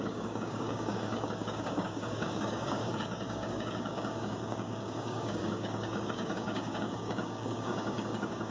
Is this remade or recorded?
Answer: remade